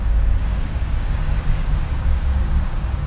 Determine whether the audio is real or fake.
fake